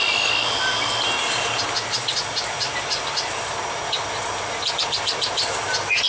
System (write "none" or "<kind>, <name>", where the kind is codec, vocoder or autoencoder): none